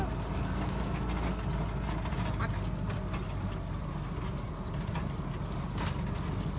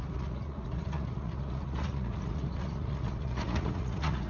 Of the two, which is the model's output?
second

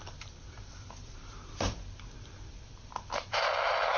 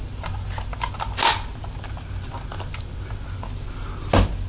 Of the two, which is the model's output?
first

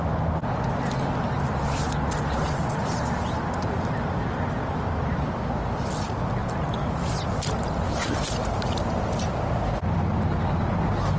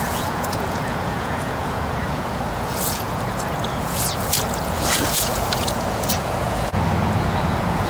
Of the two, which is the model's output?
second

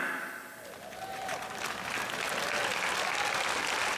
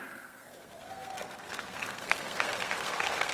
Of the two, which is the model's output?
second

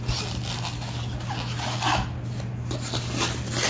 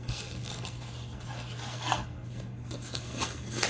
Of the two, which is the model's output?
second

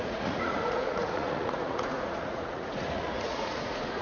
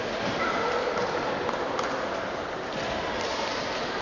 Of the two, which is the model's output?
first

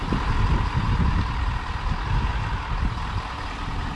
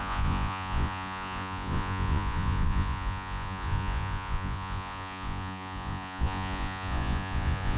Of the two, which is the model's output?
second